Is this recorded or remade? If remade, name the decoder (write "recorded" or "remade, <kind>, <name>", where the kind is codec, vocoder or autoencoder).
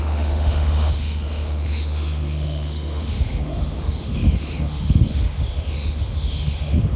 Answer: remade, autoencoder, DAC-VAE